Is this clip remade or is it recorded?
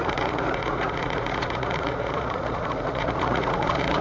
remade